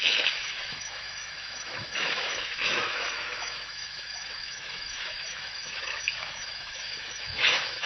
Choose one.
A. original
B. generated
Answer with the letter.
B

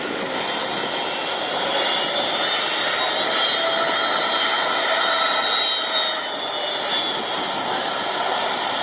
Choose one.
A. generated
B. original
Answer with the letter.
B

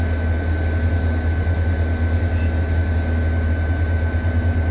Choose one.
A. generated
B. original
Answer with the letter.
B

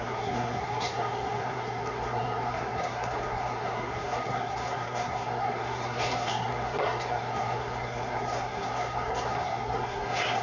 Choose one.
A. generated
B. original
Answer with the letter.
A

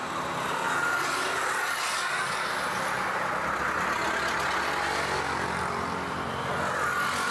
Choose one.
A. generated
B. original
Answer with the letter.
B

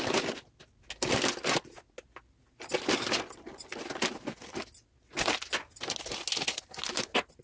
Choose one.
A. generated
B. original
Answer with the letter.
B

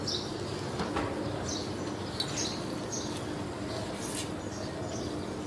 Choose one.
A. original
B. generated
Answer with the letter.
A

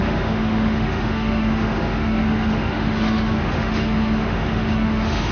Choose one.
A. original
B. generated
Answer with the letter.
B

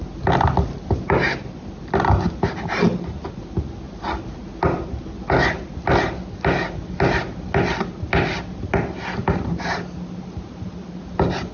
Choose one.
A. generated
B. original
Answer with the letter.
B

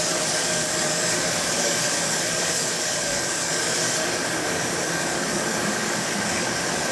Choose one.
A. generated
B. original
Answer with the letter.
A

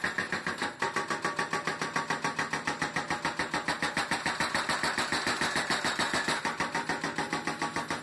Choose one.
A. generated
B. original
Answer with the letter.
B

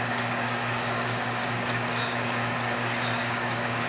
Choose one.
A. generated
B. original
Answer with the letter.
A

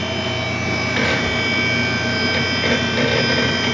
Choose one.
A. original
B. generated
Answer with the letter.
A